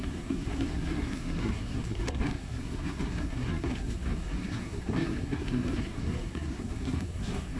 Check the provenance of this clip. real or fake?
fake